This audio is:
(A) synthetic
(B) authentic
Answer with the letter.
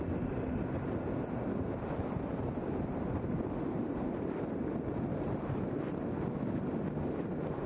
B